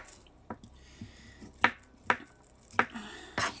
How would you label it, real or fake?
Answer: real